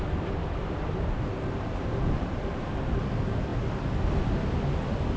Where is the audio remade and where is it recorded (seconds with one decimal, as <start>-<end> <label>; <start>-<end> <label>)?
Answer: 0.0-0.6 recorded; 0.6-3.0 remade; 3.0-5.2 recorded